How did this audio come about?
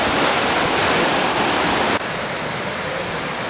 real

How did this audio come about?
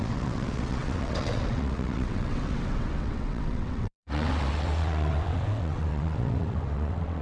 fake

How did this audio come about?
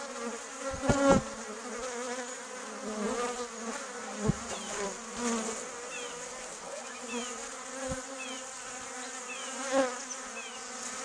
real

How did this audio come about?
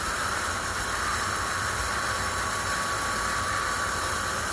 real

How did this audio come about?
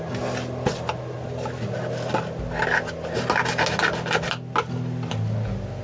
real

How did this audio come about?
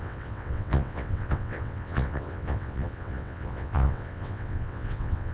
fake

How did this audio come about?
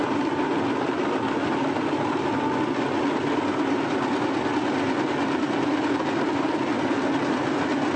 real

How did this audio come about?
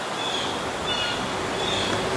real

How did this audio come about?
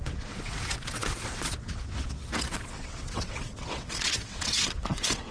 fake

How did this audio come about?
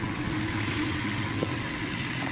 fake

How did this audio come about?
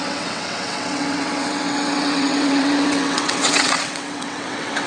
fake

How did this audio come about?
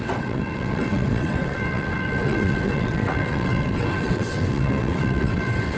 fake